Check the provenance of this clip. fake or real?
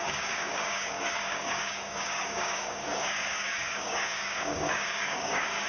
fake